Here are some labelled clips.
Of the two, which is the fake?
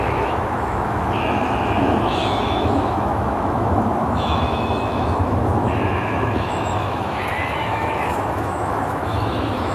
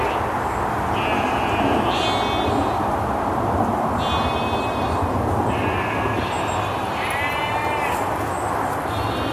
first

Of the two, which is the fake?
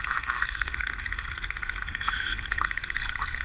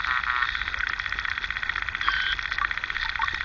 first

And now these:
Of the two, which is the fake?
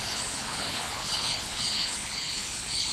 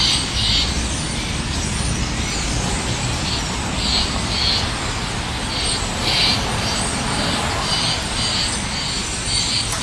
first